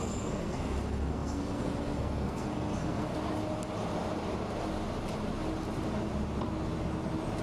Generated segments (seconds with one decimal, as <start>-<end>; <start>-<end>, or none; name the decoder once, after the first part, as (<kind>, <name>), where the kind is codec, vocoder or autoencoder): 0.0-3.1 (codec, SNAC)